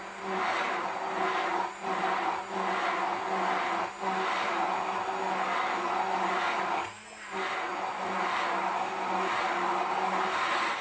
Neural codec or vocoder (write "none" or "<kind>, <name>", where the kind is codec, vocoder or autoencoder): none